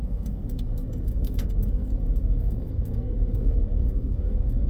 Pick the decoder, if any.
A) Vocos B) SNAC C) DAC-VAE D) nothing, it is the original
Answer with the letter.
B